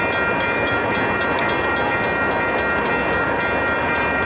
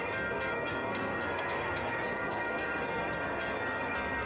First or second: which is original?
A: first